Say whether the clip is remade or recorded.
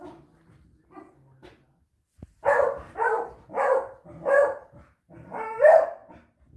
recorded